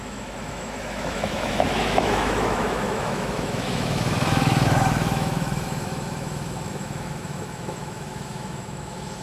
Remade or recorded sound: remade